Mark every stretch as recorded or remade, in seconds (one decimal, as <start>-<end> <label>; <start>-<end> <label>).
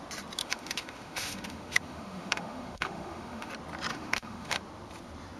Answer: 0.0-0.4 recorded; 0.4-3.5 remade; 3.5-3.9 recorded; 3.9-4.6 remade; 4.6-5.4 recorded